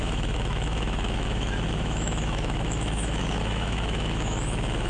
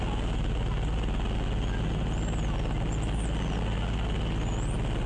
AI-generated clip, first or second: first